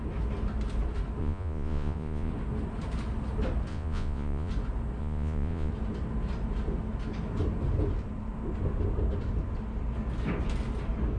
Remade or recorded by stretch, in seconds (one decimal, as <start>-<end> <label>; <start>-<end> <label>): 0.0-1.2 recorded; 1.2-2.3 remade; 2.3-3.7 recorded; 3.7-4.5 remade; 4.5-5.0 recorded; 5.0-5.7 remade; 5.7-11.2 recorded